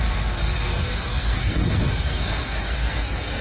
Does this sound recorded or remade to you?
remade